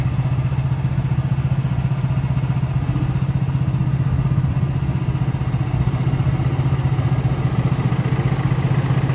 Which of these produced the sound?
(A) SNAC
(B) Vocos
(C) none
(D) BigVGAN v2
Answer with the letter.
C